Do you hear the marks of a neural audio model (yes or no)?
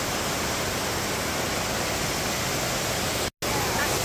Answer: no